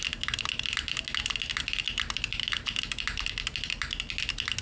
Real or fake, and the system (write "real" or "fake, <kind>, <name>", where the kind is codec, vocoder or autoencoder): real